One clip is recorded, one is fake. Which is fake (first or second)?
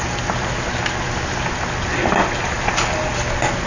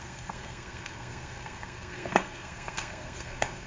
second